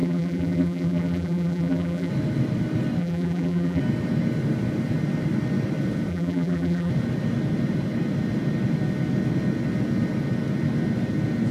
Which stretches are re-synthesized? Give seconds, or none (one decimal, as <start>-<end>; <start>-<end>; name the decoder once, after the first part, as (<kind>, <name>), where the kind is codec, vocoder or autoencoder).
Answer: 0.0-2.1 (vocoder, BigVGAN v2); 3.0-3.8; 6.1-6.9

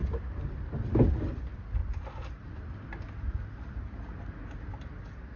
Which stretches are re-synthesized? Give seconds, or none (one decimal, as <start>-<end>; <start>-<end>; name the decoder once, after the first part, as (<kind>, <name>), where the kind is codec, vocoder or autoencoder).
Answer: 0.0-1.4 (vocoder, BigVGAN v2)

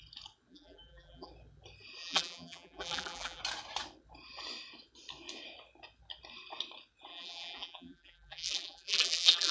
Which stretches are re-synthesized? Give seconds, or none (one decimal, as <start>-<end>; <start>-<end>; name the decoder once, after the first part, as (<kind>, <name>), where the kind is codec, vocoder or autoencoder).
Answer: 0.5-1.3 (vocoder, BigVGAN v2); 2.0-3.4; 7.1-9.5

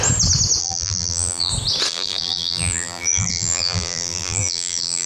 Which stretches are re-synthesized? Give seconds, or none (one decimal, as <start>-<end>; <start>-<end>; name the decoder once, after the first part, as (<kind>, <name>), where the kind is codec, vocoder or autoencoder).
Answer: 0.6-1.5 (vocoder, BigVGAN v2); 1.9-5.1

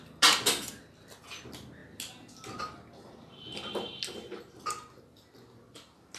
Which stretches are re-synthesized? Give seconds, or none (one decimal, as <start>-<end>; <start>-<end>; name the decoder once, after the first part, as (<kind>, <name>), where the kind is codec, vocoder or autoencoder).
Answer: none

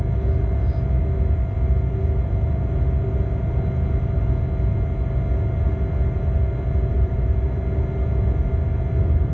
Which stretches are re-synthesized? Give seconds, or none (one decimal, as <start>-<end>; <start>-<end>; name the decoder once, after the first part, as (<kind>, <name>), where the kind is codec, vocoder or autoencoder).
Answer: 6.9-7.6 (vocoder, BigVGAN v2)

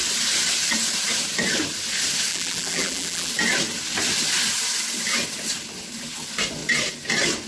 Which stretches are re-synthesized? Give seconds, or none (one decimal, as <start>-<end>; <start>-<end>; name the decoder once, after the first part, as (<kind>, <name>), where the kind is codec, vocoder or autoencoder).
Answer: 2.3-3.3 (vocoder, BigVGAN v2)